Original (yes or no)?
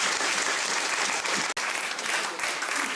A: yes